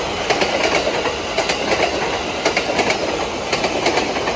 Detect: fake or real real